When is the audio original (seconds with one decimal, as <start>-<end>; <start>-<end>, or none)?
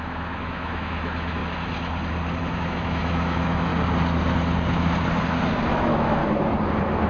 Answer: 1.4-2.4; 3.7-5.7; 6.2-7.1